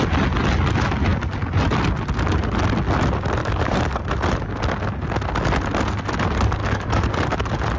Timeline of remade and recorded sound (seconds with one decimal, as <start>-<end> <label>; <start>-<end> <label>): 0.0-3.4 recorded; 3.4-4.0 remade; 4.0-6.6 recorded; 6.6-7.1 remade; 7.1-7.8 recorded